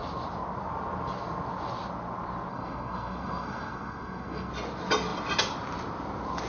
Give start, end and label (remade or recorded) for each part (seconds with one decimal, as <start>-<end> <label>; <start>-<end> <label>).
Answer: 0.0-2.5 recorded; 2.5-4.5 remade; 4.5-6.5 recorded